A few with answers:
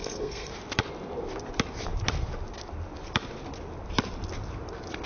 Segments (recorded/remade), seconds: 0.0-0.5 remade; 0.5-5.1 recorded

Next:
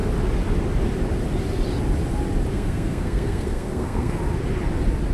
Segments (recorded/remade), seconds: 0.0-2.5 recorded; 2.5-4.2 remade; 4.2-5.1 recorded

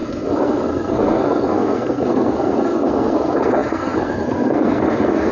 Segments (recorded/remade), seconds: 0.0-5.3 remade